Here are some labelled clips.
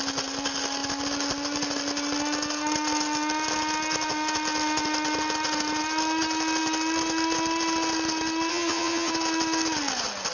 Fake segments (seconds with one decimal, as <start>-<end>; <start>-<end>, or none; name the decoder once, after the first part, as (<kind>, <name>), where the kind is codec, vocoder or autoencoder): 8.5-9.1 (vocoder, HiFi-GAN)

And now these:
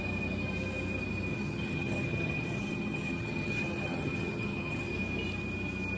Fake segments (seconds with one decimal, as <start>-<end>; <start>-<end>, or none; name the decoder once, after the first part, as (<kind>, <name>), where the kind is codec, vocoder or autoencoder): 1.3-4.9 (vocoder, HiFi-GAN)

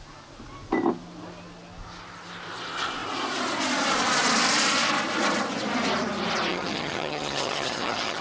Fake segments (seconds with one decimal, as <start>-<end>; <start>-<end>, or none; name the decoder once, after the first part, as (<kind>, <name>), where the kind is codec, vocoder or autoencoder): 6.5-8.2 (vocoder, HiFi-GAN)